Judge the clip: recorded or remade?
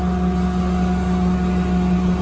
recorded